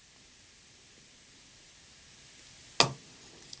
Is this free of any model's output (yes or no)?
yes